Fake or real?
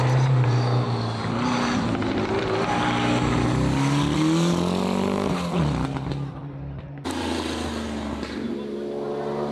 real